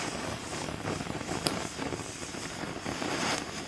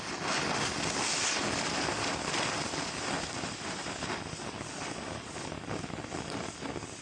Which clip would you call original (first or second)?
second